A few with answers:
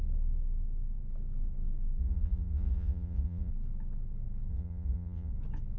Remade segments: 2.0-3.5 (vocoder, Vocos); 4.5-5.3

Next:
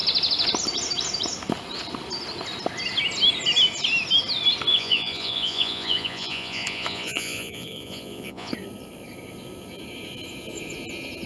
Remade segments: 4.7-8.5 (vocoder, Vocos)

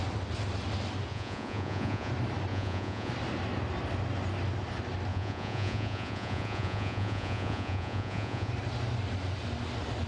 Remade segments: 1.1-2.1 (vocoder, Vocos); 2.5-3.1; 5.1-8.5

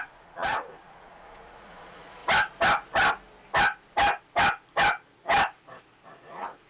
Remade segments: 0.0-2.2 (vocoder, Vocos); 6.2-6.7

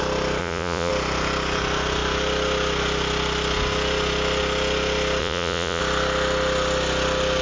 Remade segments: 0.4-0.9 (vocoder, Vocos); 5.2-5.8

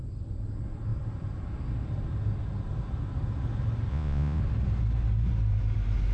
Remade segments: 3.9-4.4 (vocoder, Vocos)